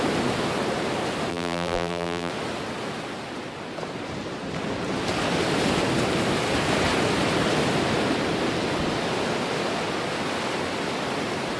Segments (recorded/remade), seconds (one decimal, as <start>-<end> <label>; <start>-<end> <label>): 0.0-1.3 recorded; 1.3-2.3 remade; 2.3-11.6 recorded